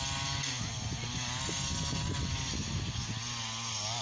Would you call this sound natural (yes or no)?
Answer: yes